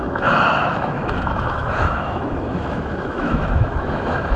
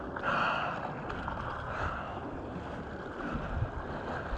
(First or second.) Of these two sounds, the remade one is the first